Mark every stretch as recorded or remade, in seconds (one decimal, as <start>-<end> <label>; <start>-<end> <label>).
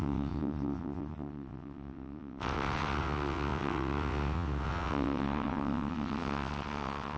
0.0-7.2 remade